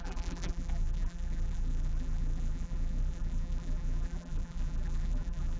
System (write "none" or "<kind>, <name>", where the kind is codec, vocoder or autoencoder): vocoder, BigVGAN v2